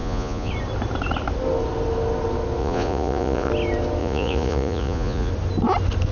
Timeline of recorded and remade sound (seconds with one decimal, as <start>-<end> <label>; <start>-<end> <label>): 0.0-0.5 remade; 0.5-2.6 recorded; 2.6-3.5 remade; 3.5-4.0 recorded; 4.0-5.3 remade; 5.3-6.1 recorded